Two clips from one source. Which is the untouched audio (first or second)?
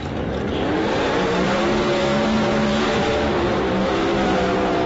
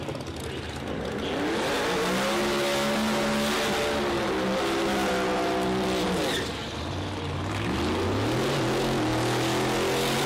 second